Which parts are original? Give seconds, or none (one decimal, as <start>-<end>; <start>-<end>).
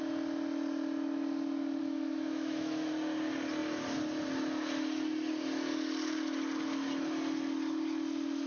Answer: 0.0-1.8; 2.9-8.5